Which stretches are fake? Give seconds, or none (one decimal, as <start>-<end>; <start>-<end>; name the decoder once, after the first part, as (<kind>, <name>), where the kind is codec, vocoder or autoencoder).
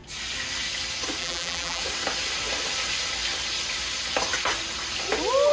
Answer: 1.2-1.8 (vocoder, BigVGAN v2)